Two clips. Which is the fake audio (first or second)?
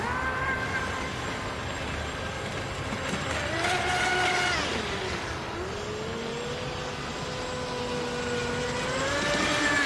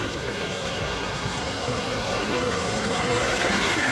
second